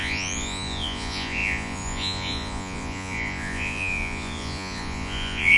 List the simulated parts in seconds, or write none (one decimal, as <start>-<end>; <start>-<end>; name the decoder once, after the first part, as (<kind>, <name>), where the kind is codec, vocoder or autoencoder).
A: 0.0-5.6 (vocoder, Vocos)

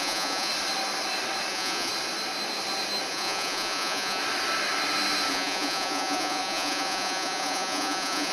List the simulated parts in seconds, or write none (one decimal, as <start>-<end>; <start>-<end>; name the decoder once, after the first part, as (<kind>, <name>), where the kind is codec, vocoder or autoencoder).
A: 0.0-0.5 (vocoder, Vocos); 1.5-1.9; 3.1-4.2; 5.3-8.3

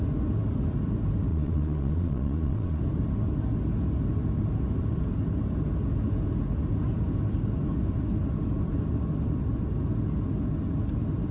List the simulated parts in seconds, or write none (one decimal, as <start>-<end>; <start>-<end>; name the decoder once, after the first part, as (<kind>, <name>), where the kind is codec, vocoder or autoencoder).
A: 1.3-2.8 (vocoder, Vocos)

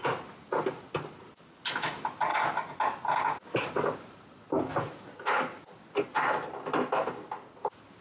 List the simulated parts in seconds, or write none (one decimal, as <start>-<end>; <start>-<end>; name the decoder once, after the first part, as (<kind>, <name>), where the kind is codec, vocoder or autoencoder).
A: none

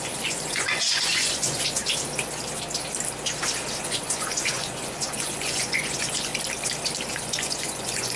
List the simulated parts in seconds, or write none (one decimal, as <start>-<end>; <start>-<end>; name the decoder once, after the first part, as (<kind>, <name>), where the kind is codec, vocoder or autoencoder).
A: 0.0-1.8 (vocoder, Vocos); 3.8-6.3; 7.1-8.2

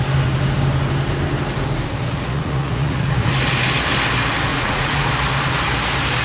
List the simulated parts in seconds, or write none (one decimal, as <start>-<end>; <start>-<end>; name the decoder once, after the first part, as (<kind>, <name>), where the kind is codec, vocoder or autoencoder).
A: 2.0-3.3 (vocoder, Vocos); 4.5-5.1

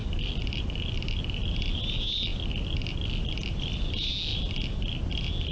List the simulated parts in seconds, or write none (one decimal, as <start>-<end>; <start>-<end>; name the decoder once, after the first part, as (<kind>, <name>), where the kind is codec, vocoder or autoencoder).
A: none